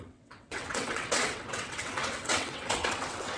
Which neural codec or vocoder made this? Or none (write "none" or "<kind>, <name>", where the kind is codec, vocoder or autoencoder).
vocoder, WaveNeXt